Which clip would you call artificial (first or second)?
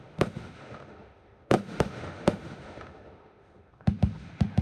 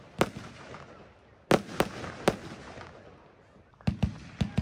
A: first